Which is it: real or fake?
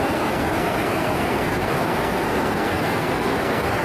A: fake